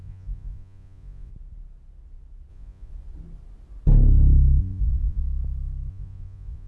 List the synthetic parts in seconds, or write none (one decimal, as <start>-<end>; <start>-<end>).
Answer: 0.0-1.3; 2.5-2.9; 4.6-5.2; 5.9-6.7